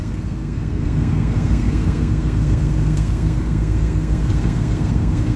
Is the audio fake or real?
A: fake